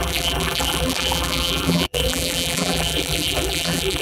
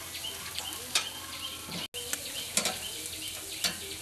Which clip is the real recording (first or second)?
second